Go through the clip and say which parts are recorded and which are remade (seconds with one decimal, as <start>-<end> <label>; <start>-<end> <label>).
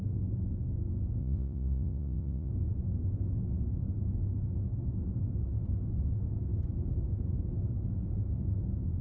0.0-1.2 recorded; 1.2-2.5 remade; 2.5-9.0 recorded